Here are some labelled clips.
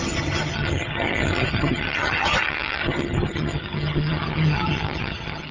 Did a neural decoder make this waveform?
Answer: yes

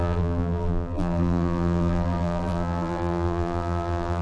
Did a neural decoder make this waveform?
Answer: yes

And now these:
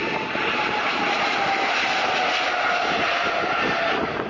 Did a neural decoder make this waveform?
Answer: no